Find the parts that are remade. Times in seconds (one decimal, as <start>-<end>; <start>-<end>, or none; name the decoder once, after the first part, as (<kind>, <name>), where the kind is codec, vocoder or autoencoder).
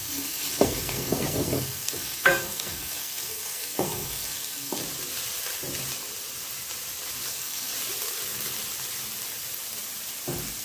0.0-4.8 (codec, SNAC); 7.3-7.7